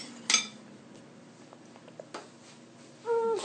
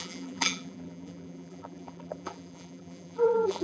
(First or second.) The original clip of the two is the first